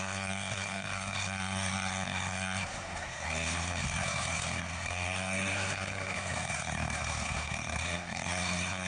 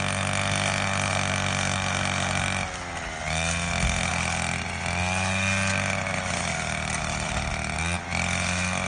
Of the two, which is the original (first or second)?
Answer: second